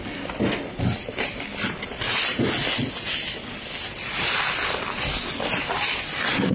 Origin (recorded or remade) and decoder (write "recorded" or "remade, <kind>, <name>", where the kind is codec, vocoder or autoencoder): recorded